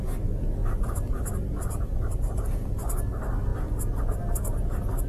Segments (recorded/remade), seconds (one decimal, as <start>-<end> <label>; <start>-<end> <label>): 0.0-0.6 recorded; 0.6-2.7 remade; 2.7-5.1 recorded

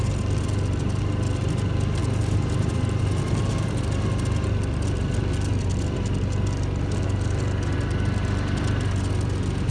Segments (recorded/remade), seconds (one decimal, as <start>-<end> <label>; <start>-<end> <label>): 0.0-2.0 recorded; 2.0-3.2 remade; 3.2-9.7 recorded